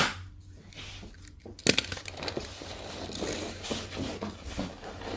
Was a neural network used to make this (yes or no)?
no